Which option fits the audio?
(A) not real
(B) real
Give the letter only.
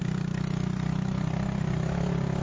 B